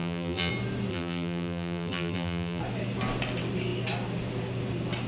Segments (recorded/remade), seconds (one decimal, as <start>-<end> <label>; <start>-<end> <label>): 0.0-0.5 remade; 0.5-0.9 recorded; 0.9-2.6 remade; 2.6-5.1 recorded